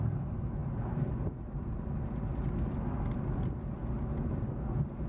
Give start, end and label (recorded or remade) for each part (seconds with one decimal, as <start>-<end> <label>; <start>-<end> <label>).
0.0-5.1 recorded